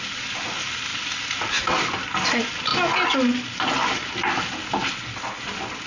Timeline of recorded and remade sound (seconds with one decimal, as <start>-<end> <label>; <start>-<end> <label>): 0.0-5.9 recorded

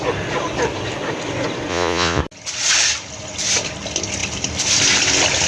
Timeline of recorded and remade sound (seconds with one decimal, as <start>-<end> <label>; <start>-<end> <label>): 0.0-1.7 recorded; 1.7-2.2 remade; 2.2-5.5 recorded

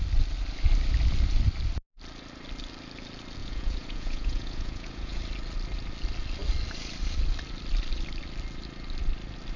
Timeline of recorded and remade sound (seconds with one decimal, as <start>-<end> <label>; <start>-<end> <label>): 0.0-3.4 recorded; 3.4-5.2 remade; 5.2-9.6 recorded

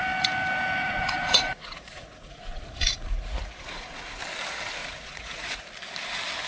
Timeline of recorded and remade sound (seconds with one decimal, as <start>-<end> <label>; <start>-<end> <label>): 0.0-0.8 recorded; 0.8-4.2 remade; 4.2-4.8 recorded; 4.8-5.6 remade; 5.6-6.5 recorded

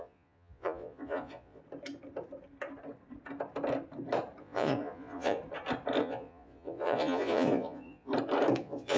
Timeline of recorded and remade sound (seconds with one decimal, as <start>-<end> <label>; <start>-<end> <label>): 0.0-1.6 remade; 1.6-4.4 recorded; 4.4-5.4 remade; 5.4-6.0 recorded; 6.0-8.1 remade; 8.1-8.6 recorded; 8.6-9.0 remade

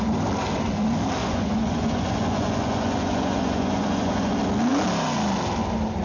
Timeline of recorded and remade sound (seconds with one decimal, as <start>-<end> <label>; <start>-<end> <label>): 0.0-1.2 recorded; 1.2-4.3 remade; 4.3-6.0 recorded

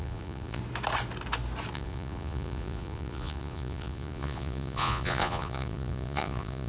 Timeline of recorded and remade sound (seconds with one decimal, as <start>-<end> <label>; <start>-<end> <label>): 0.0-0.6 remade; 0.6-1.7 recorded; 1.7-6.7 remade

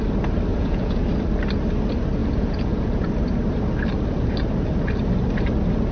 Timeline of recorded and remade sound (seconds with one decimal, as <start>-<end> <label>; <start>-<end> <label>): 0.0-0.5 recorded; 0.5-1.0 remade; 1.0-2.2 recorded; 2.2-3.1 remade; 3.1-5.9 recorded